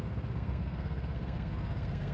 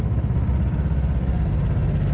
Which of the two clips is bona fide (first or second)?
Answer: second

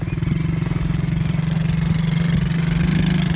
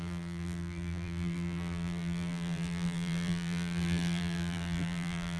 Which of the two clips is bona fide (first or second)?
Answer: first